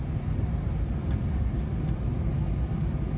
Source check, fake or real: real